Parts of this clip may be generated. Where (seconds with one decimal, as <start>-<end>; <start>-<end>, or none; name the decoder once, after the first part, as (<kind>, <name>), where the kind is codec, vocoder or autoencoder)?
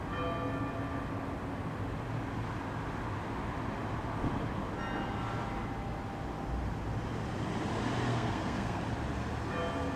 8.1-8.8 (codec, SNAC)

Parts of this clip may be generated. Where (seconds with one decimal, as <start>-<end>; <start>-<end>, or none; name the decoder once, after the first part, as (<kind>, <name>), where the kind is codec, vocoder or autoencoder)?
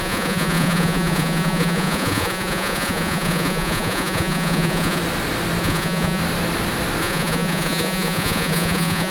0.0-5.0 (vocoder, Vocos); 5.6-6.2; 7.0-9.1